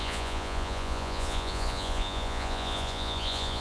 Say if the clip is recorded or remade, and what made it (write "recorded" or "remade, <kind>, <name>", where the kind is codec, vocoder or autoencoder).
remade, vocoder, Vocos